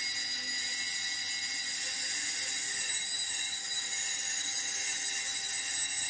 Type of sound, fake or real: real